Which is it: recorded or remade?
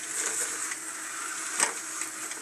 recorded